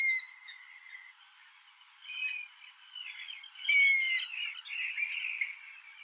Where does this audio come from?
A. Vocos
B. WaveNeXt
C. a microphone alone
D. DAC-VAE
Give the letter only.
C